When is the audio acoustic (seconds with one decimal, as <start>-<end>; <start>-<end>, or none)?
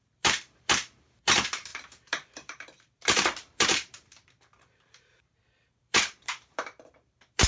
none